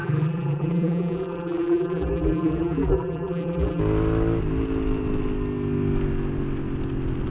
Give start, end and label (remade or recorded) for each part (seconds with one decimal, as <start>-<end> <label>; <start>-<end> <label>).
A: 0.0-3.8 remade; 3.8-7.3 recorded

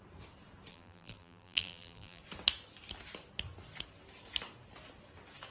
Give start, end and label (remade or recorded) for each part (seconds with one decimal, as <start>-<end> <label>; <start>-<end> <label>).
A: 0.0-0.7 recorded; 0.7-2.2 remade; 2.2-5.5 recorded

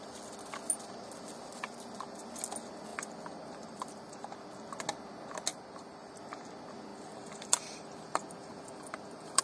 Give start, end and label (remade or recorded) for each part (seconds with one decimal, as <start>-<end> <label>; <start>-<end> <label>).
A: 0.0-2.9 recorded; 2.9-3.9 remade; 3.9-5.5 recorded; 5.5-6.2 remade; 6.2-6.9 recorded; 6.9-9.4 remade

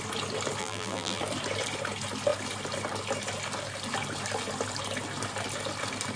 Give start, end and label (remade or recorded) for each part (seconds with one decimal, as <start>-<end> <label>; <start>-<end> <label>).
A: 0.0-0.6 recorded; 0.6-1.2 remade; 1.2-6.2 recorded